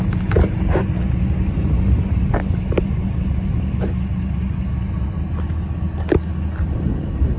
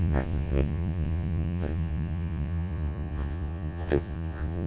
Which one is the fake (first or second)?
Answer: second